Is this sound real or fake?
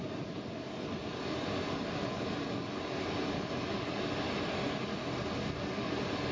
real